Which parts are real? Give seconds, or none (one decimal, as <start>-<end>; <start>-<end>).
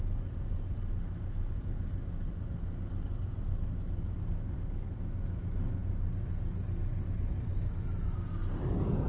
0.0-9.1